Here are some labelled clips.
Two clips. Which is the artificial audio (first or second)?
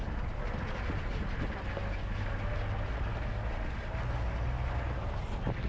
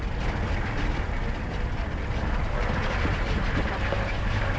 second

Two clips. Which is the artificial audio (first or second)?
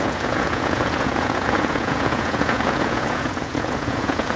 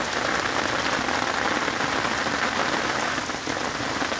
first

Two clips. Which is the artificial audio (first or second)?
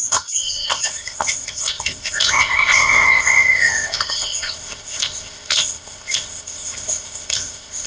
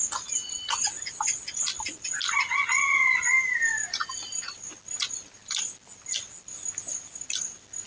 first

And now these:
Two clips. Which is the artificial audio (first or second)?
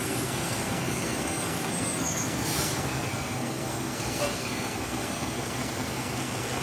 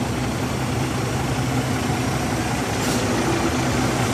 first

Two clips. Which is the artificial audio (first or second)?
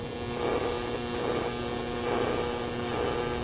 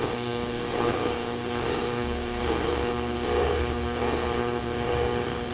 second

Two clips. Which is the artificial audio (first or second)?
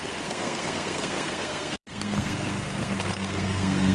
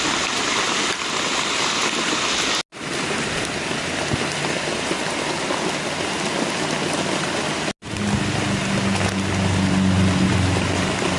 first